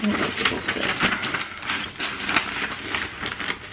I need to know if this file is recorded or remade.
recorded